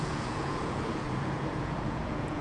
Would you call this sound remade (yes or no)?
yes